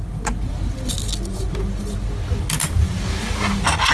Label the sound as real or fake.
real